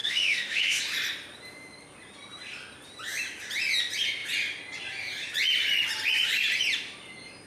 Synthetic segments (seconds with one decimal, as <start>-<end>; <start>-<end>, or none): 0.0-0.8